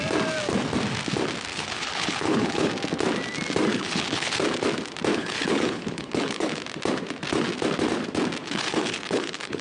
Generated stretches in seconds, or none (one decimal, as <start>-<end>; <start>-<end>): 1.5-2.7; 3.7-4.4; 5.1-6.6; 8.4-9.6

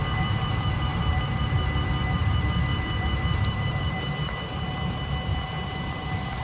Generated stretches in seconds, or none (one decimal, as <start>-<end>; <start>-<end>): 0.0-6.4